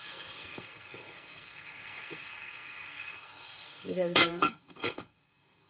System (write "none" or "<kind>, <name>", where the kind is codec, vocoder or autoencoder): codec, SNAC